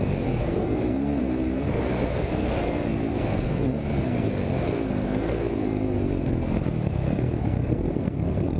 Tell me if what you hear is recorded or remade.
remade